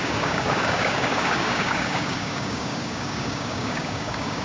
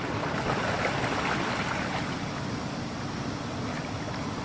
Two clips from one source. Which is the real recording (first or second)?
second